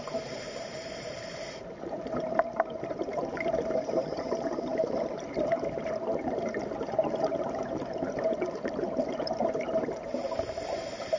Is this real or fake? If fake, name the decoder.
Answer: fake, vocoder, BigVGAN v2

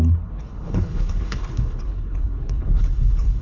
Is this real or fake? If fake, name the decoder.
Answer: fake, codec, HILCodec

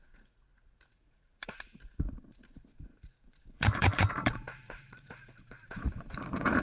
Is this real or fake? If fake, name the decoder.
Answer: fake, vocoder, Vocos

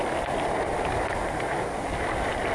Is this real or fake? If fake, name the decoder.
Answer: real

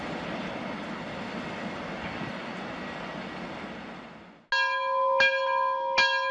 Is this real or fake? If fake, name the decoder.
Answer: real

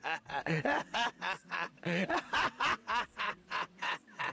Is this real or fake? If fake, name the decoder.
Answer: fake, vocoder, WaveNeXt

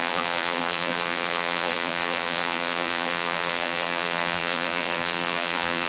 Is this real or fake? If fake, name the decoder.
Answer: fake, vocoder, BigVGAN v2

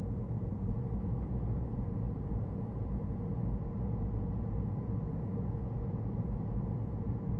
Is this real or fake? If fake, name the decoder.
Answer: fake, vocoder, Vocos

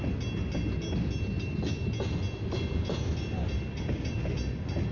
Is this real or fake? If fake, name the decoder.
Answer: real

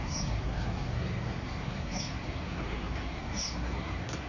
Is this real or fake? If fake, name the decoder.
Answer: fake, codec, SNAC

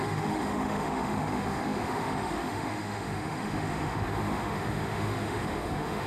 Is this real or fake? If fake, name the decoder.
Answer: fake, autoencoder, DAC-VAE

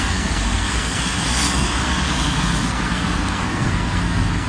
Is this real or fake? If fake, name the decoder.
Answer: fake, codec, SNAC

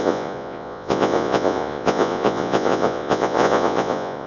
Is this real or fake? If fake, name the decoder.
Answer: fake, vocoder, Vocos